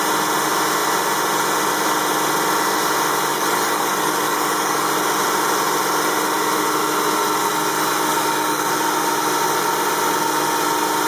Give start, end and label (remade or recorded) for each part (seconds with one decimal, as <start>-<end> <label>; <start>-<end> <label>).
0.0-3.3 recorded; 3.3-4.9 remade; 4.9-8.1 recorded; 8.1-8.7 remade; 8.7-11.1 recorded